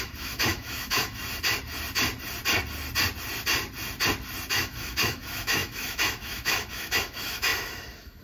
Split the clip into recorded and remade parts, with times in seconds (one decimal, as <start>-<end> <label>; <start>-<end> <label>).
0.0-1.2 remade; 1.2-4.5 recorded; 4.5-8.2 remade

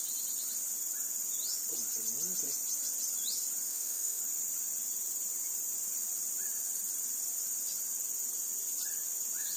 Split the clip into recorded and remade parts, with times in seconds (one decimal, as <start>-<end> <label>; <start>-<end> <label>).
0.0-3.7 recorded; 3.7-4.2 remade; 4.2-9.6 recorded

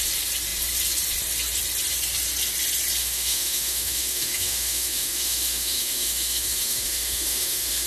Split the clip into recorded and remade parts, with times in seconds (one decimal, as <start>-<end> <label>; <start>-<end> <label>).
0.0-3.0 recorded; 3.0-7.9 remade

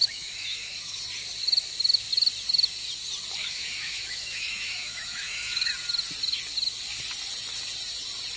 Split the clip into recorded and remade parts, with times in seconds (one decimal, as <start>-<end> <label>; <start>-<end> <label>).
0.0-1.0 remade; 1.0-3.4 recorded; 3.4-5.7 remade; 5.7-8.4 recorded

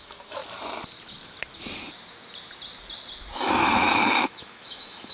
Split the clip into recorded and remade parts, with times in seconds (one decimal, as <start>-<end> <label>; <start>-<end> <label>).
0.0-0.4 remade; 0.4-3.5 recorded; 3.5-5.1 remade

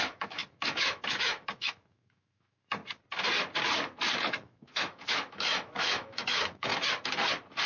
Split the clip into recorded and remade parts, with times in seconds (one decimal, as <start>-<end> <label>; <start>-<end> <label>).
0.0-2.8 remade; 2.8-4.2 recorded; 4.2-6.7 remade; 6.7-7.7 recorded